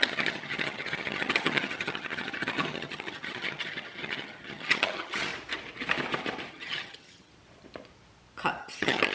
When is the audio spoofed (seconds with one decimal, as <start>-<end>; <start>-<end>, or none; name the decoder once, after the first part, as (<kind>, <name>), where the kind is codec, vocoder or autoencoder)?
0.0-5.3 (vocoder, HiFi-GAN); 6.5-7.3; 8.6-9.1